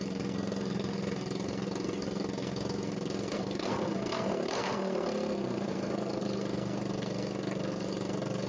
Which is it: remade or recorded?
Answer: remade